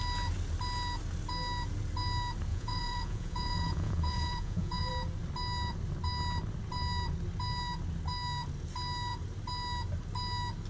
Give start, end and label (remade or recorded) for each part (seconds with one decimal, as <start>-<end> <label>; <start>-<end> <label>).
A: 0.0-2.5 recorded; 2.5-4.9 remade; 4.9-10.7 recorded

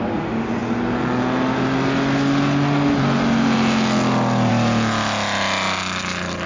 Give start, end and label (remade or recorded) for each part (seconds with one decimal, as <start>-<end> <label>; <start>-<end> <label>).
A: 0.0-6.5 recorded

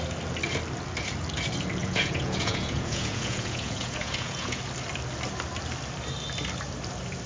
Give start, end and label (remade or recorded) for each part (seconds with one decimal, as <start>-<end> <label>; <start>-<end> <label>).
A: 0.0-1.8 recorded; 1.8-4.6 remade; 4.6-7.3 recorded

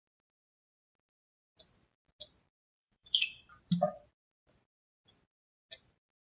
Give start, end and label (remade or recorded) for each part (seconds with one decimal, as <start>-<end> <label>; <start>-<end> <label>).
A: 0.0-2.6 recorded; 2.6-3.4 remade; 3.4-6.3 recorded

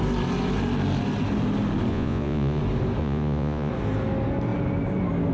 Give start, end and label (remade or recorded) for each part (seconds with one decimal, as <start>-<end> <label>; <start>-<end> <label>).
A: 0.0-1.9 recorded; 1.9-2.6 remade; 2.6-3.0 recorded; 3.0-3.7 remade; 3.7-5.3 recorded

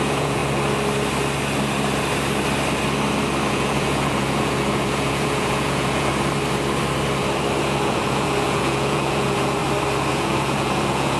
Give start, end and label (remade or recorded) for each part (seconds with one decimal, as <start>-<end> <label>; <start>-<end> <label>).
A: 0.0-0.4 remade; 0.4-3.5 recorded; 3.5-6.1 remade; 6.1-7.6 recorded; 7.6-9.6 remade; 9.6-10.1 recorded; 10.1-11.2 remade